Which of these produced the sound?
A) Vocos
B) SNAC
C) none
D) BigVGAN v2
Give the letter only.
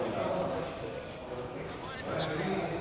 C